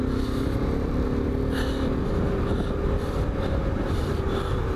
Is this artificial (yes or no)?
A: no